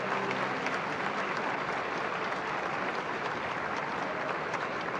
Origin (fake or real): real